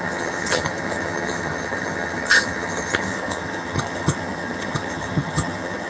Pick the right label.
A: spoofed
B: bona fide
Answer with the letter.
A